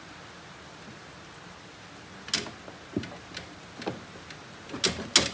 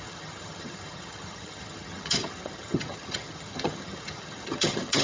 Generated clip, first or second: second